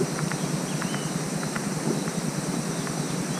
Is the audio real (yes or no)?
yes